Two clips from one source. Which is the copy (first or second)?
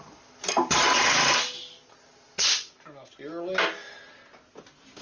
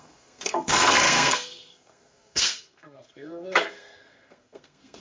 second